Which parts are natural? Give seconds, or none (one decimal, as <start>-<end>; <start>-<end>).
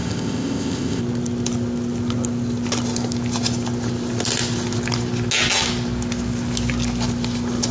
1.0-7.7